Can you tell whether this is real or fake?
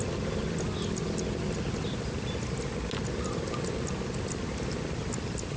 real